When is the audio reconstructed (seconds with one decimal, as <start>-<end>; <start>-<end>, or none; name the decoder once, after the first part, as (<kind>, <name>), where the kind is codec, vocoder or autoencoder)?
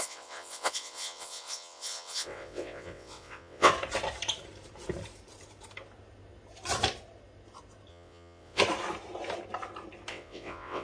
0.0-3.7 (vocoder, WaveNeXt); 7.9-8.6; 10.1-10.8